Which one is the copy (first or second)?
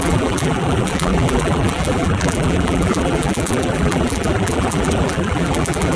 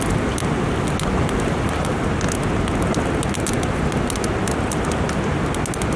first